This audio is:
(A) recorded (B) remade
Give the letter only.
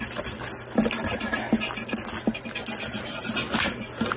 A